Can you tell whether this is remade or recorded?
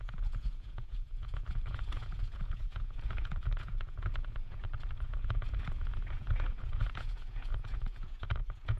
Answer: remade